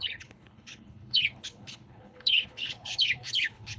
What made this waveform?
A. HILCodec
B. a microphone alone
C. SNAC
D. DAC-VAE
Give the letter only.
A